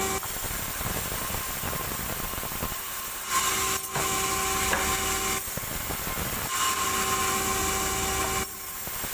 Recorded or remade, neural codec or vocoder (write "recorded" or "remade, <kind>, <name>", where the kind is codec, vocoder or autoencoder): recorded